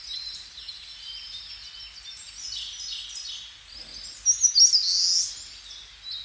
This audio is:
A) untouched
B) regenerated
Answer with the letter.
A